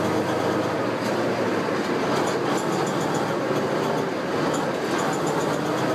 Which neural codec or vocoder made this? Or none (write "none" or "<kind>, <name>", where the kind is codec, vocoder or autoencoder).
none